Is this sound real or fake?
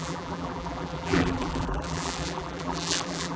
fake